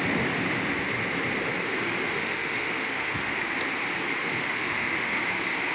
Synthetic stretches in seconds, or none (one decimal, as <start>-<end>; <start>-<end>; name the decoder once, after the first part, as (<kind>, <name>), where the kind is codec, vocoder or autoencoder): 2.0-3.4 (autoencoder, DAC-VAE); 4.2-5.2